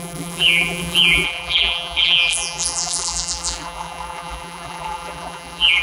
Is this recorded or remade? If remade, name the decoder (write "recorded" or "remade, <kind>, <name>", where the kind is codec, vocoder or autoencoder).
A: remade, vocoder, BigVGAN v2